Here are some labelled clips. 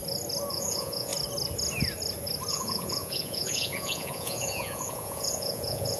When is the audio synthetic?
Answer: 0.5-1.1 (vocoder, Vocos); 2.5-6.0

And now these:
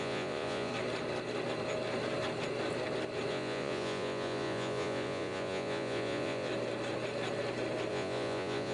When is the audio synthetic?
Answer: 0.0-0.7 (vocoder, Vocos); 3.3-6.5; 7.9-8.7

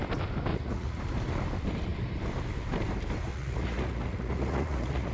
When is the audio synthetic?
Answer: 0.5-1.0 (vocoder, Vocos); 3.3-5.1

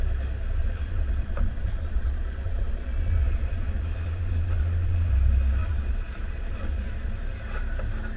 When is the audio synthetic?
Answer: 0.6-5.1 (vocoder, Vocos); 5.6-7.1

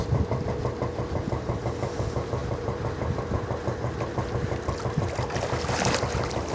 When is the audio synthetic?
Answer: none

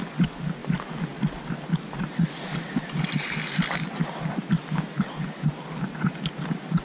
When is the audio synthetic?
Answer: none

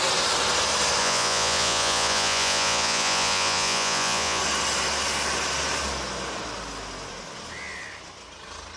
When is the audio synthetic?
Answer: 1.0-4.4 (vocoder, Vocos)